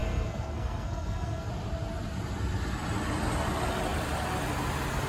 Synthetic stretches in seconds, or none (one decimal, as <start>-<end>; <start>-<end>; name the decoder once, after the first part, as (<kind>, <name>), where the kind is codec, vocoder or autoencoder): 0.0-1.5 (codec, SNAC)